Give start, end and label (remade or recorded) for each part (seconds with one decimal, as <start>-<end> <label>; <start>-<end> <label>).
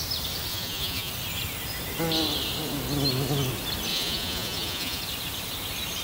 0.0-0.5 recorded; 0.5-1.1 remade; 1.1-3.9 recorded; 3.9-5.0 remade; 5.0-6.0 recorded